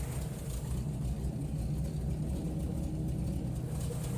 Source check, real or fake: real